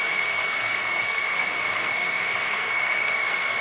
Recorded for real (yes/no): no